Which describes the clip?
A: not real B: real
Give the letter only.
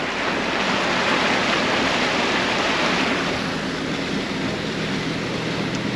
B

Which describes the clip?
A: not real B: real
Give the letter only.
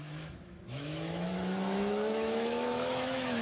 A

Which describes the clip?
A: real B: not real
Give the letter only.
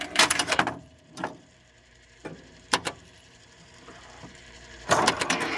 B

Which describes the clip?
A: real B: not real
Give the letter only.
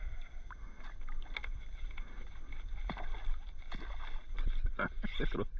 A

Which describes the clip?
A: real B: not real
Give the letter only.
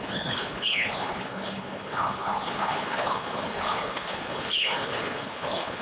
B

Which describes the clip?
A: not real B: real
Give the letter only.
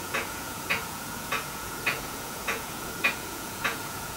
A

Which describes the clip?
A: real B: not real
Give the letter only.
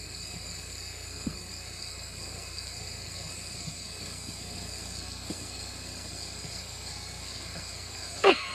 B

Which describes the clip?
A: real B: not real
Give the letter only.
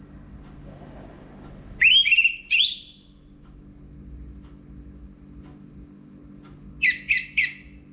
A